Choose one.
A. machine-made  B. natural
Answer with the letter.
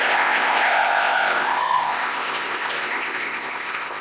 A